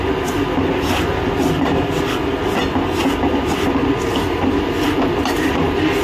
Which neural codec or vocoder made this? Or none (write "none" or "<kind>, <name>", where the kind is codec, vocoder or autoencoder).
none